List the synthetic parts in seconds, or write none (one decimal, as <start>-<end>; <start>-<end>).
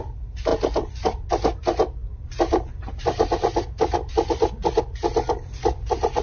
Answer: none